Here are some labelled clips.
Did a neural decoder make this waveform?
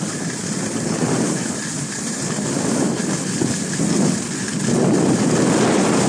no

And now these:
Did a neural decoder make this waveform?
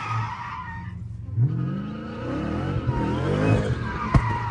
no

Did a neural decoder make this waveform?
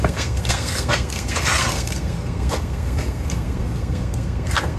yes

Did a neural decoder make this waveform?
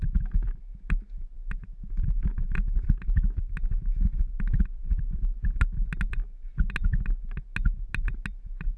no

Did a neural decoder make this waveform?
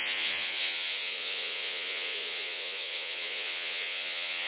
yes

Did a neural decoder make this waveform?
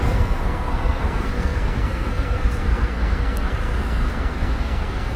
yes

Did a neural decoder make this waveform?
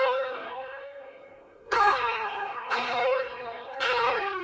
yes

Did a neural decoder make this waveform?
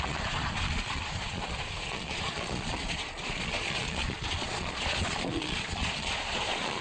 yes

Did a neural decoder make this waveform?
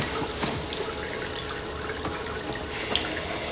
no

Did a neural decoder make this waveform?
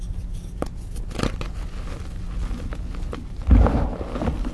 no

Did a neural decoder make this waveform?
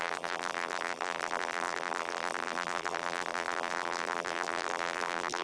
yes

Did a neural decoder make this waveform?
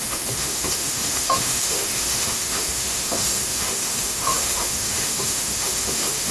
yes